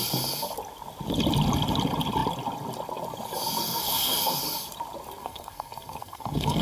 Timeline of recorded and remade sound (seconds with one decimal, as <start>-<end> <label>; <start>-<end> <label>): 0.0-3.6 recorded; 3.6-4.4 remade; 4.4-5.2 recorded; 5.2-6.6 remade